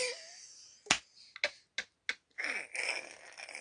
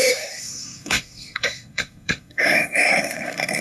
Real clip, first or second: first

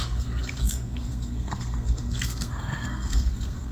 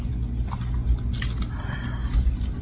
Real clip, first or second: second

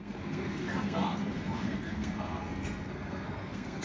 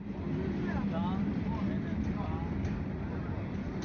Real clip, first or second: second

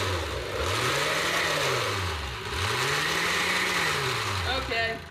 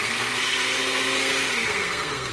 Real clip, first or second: first